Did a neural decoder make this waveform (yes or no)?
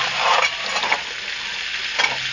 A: no